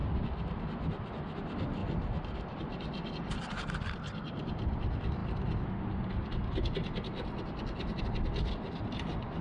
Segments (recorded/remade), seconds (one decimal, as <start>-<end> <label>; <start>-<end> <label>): 0.0-9.4 recorded